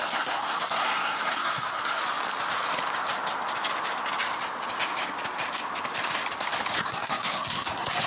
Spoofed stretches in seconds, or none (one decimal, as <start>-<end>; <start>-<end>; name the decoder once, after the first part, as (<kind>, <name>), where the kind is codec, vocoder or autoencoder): 0.0-2.0 (codec, SNAC); 6.8-8.1

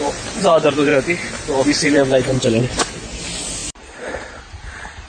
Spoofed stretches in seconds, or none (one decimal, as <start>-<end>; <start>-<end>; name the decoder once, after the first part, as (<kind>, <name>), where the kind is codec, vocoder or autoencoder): 0.0-5.1 (vocoder, BigVGAN v2)

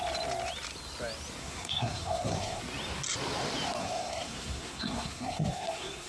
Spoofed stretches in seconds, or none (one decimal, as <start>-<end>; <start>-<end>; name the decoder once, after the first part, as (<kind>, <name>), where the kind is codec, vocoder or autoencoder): 1.4-2.6 (codec, SNAC); 3.8-6.1

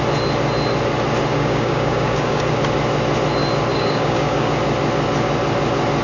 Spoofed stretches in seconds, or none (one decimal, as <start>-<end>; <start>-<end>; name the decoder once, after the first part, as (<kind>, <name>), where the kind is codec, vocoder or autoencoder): 1.3-2.5 (codec, DAC); 3.7-4.5

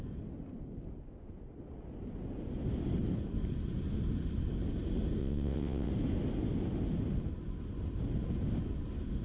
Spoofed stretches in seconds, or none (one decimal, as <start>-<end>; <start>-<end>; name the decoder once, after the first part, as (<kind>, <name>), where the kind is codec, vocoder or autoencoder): 5.2-5.9 (vocoder, WaveNeXt)

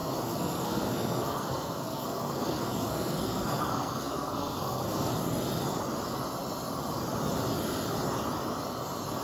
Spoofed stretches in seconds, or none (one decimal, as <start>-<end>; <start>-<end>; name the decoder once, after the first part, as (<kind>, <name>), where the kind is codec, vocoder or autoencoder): 0.0-5.1 (codec, SNAC)

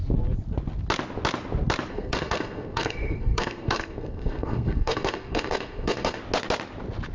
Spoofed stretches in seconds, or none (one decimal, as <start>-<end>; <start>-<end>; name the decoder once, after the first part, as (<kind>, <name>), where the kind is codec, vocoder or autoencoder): 1.9-6.2 (codec, SNAC)